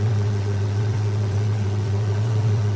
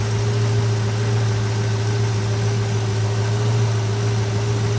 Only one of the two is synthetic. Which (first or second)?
first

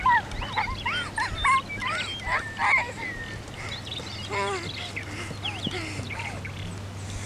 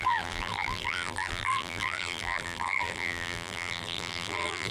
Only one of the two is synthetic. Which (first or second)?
second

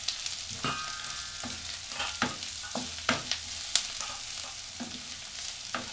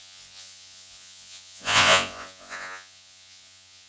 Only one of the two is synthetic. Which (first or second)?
second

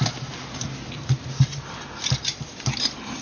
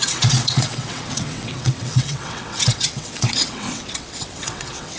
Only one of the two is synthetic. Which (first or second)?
second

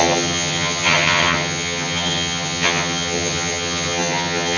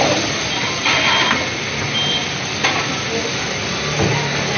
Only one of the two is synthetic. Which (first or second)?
first